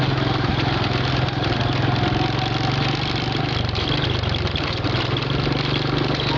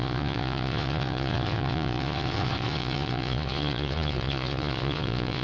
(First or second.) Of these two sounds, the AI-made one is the second